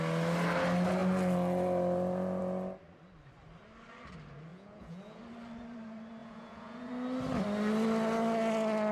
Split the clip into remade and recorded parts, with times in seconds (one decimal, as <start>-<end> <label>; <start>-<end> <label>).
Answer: 0.0-4.5 recorded; 4.5-5.2 remade; 5.2-6.2 recorded; 6.2-6.9 remade; 6.9-8.9 recorded